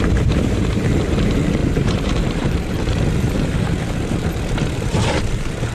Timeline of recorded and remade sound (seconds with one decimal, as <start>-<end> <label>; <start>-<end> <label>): 0.0-5.7 remade